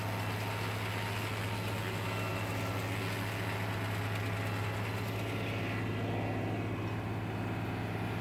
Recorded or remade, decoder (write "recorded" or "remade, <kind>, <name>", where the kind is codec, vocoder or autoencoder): recorded